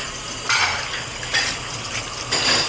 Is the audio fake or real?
real